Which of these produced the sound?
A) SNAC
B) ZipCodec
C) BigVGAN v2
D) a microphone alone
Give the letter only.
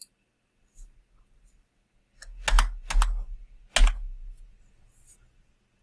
D